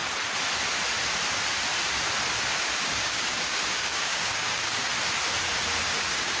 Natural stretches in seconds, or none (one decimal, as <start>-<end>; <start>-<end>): 0.0-2.8; 4.9-5.8